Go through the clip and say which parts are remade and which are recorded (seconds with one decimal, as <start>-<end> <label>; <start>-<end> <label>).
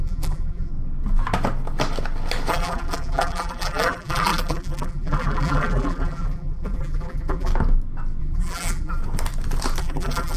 0.0-0.7 remade; 0.7-2.5 recorded; 2.5-7.5 remade; 7.5-8.2 recorded; 8.2-9.0 remade; 9.0-9.8 recorded; 9.8-10.4 remade